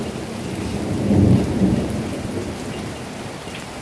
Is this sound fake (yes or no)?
no